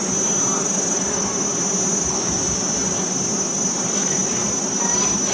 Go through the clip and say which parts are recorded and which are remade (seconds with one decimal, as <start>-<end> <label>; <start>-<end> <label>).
0.0-5.3 recorded